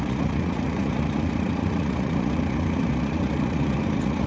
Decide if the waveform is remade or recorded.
remade